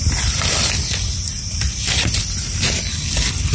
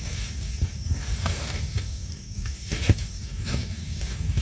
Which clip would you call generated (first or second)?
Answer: second